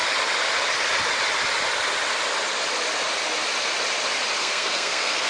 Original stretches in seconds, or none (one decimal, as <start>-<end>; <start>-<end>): 0.0-4.4